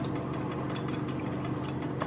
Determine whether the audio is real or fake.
real